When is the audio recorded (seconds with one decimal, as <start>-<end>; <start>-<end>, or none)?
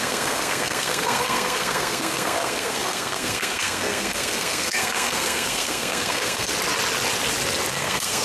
6.5-7.7